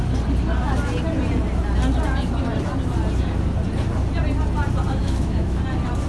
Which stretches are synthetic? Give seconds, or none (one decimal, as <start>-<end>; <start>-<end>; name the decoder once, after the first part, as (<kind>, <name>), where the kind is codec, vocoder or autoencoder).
5.0-5.6 (autoencoder, DAC-VAE)